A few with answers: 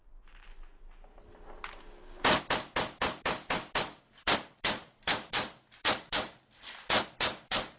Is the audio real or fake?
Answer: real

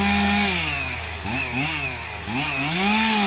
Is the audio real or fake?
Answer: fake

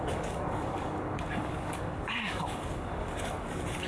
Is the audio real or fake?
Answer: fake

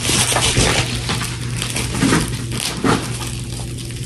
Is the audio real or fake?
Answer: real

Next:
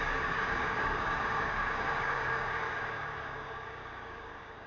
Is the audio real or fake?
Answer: fake